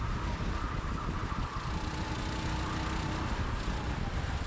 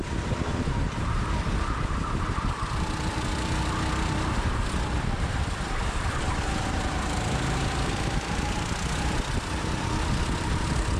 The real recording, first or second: first